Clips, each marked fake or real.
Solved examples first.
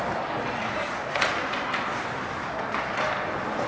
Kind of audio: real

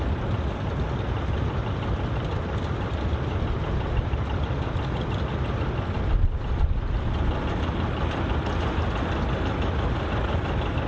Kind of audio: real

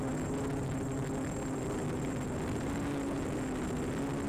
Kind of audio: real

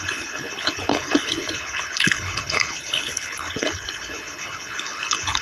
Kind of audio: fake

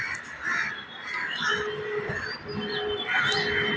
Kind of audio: real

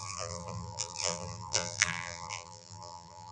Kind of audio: fake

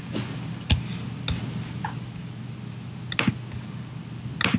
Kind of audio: real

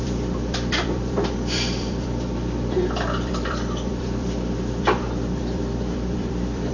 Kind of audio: fake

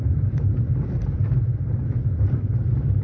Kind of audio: real